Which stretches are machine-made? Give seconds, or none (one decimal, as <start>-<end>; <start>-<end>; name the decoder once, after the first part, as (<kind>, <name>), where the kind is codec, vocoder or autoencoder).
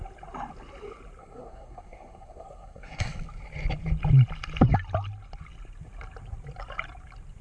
1.2-3.1 (codec, SNAC)